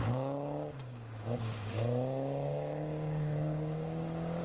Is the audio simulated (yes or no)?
yes